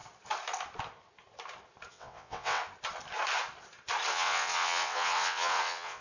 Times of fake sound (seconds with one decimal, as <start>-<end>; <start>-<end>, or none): 1.9-2.6; 4.1-6.0